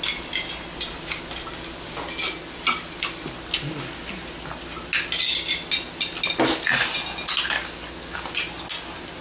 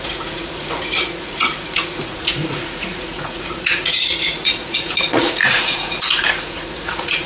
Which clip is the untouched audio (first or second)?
first